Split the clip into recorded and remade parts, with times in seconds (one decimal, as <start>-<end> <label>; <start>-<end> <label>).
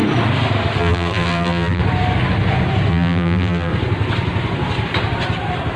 0.0-0.8 recorded; 0.8-1.8 remade; 1.8-2.9 recorded; 2.9-3.7 remade; 3.7-5.8 recorded